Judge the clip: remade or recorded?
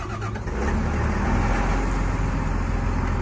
recorded